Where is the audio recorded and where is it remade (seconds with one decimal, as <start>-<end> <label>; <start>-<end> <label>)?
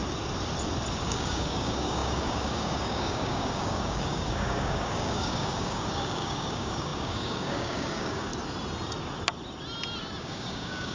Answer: 0.0-0.9 recorded; 0.9-8.3 remade; 8.3-10.2 recorded; 10.2-10.9 remade